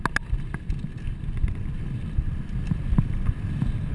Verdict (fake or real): real